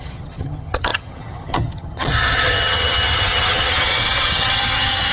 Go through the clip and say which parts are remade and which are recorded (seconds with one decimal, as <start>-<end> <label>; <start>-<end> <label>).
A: 0.0-5.1 remade